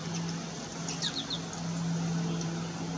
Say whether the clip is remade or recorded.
recorded